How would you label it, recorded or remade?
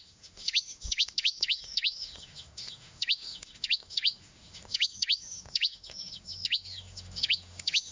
remade